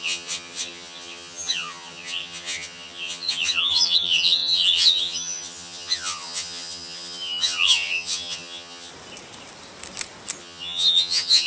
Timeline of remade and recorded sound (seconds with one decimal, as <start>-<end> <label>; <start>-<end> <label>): 0.0-8.9 remade; 8.9-10.4 recorded; 10.4-11.5 remade